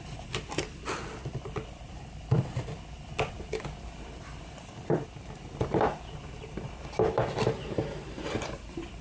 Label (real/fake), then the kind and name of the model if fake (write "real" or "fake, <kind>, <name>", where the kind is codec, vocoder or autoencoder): fake, vocoder, BigVGAN v2